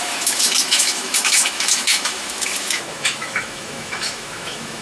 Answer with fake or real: fake